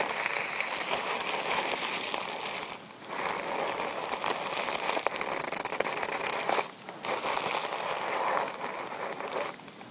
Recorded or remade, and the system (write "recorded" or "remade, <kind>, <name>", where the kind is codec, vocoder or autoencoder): recorded